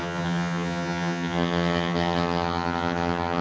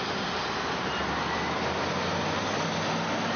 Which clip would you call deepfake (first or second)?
first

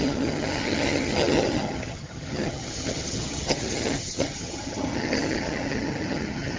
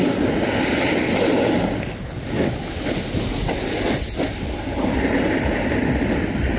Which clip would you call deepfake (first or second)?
first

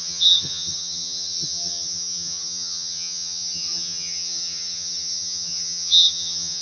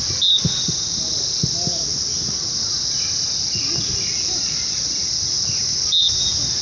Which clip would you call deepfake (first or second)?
first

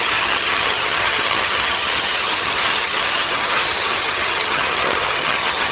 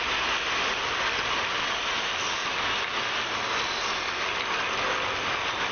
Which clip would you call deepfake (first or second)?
first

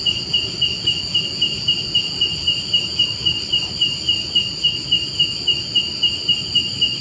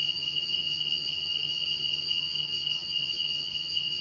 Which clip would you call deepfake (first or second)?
second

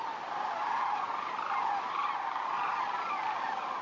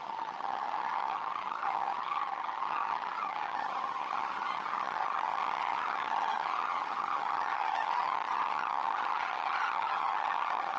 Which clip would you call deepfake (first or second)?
second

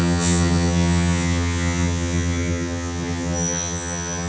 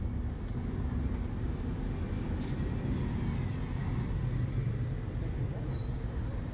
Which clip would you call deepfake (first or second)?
first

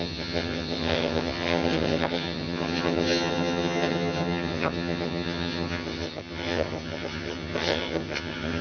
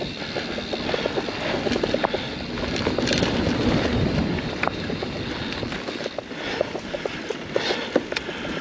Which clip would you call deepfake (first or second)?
first